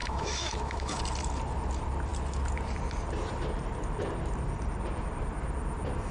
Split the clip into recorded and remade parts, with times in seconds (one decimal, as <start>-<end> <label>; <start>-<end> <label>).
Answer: 0.0-1.0 remade; 1.0-6.1 recorded